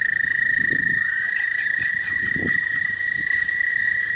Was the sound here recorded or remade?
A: remade